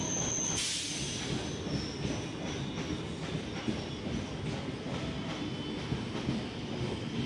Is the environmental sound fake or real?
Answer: real